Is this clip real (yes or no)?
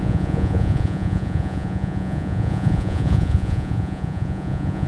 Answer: no